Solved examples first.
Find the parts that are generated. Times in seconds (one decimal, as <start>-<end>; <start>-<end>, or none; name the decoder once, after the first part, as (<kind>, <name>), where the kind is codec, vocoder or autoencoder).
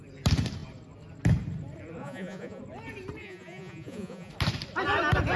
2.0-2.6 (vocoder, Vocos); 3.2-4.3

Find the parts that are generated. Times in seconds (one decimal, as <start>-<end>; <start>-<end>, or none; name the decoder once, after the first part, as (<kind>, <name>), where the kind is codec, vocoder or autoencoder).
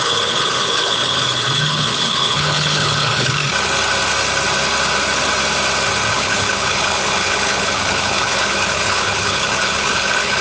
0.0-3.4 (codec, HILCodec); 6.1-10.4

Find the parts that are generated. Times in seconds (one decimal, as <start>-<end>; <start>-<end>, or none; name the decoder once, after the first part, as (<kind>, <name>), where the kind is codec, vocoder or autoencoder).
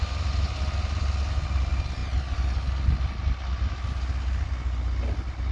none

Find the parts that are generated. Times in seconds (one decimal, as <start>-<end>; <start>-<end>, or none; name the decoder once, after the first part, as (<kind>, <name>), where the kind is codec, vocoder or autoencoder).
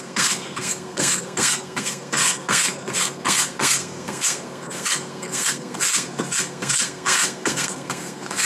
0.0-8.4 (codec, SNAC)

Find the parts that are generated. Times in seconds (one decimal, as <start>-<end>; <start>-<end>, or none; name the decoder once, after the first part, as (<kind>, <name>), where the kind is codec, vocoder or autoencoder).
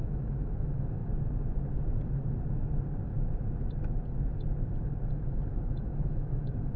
0.0-1.0 (autoencoder, DAC-VAE); 5.1-6.8